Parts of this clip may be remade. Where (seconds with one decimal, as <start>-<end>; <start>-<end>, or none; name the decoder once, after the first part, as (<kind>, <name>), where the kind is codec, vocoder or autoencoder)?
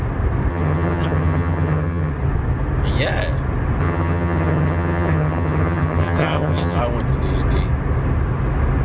0.5-2.1 (vocoder, HiFi-GAN); 3.8-6.8